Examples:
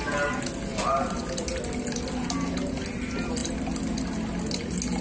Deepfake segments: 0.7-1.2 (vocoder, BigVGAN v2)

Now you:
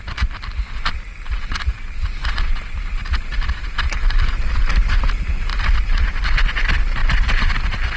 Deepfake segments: 5.5-6.0 (vocoder, BigVGAN v2); 7.0-8.0

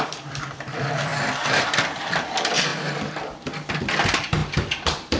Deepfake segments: 0.0-1.1 (vocoder, BigVGAN v2); 2.0-2.7; 3.8-5.2

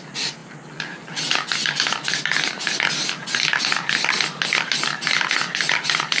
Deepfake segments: none

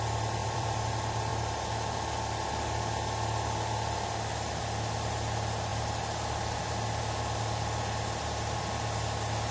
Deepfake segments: 0.4-0.9 (vocoder, BigVGAN v2)

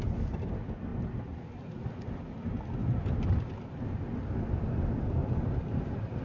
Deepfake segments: 2.8-3.3 (vocoder, BigVGAN v2); 5.2-6.2